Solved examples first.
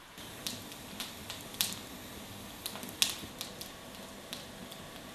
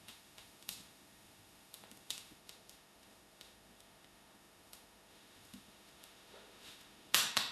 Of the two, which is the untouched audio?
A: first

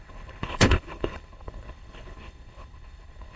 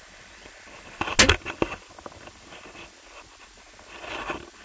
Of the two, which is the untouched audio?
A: second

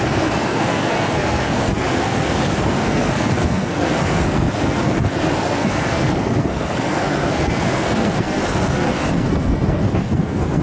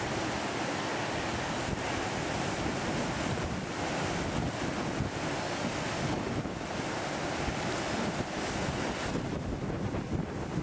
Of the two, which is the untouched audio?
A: second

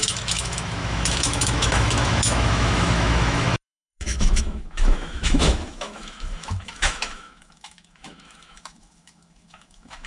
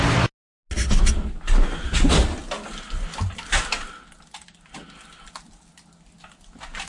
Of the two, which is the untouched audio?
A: second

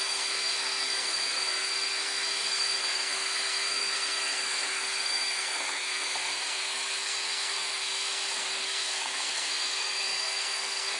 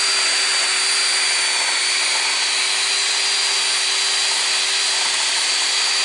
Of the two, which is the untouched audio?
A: second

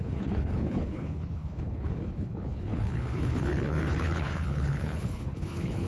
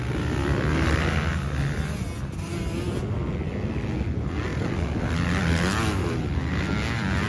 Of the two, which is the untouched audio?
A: second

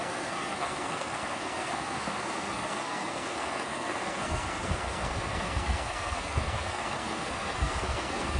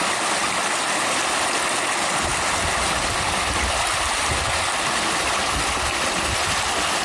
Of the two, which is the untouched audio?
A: second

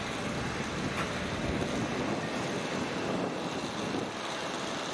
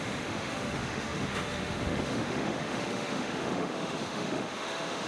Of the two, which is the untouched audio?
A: first